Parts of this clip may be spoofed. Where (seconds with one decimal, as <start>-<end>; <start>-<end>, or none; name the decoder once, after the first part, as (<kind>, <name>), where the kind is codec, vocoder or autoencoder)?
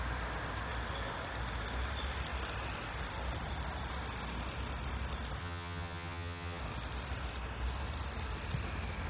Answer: 5.4-6.6 (vocoder, HiFi-GAN)